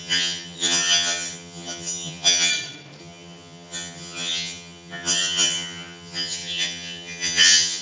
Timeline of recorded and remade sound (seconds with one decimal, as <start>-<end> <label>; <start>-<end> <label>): 0.0-2.5 remade; 2.5-3.0 recorded; 3.0-7.8 remade